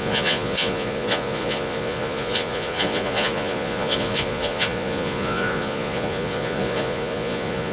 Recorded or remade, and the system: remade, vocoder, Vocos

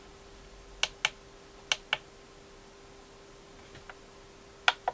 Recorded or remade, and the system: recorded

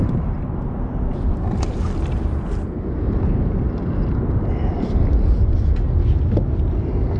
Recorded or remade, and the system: recorded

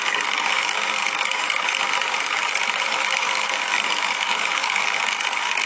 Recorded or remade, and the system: remade, codec, DAC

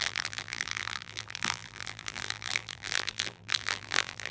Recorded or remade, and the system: remade, vocoder, BigVGAN v2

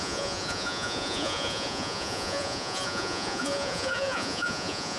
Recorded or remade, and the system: remade, vocoder, Vocos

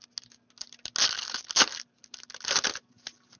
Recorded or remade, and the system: recorded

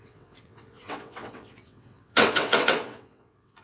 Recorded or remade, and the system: remade, vocoder, WaveNeXt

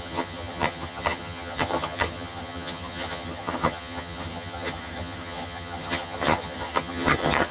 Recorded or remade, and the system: remade, vocoder, HiFi-GAN